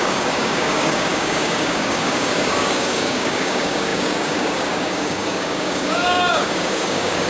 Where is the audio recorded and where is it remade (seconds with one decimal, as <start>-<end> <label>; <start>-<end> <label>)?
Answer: 0.0-7.3 remade